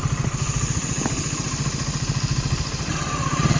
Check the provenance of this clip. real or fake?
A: real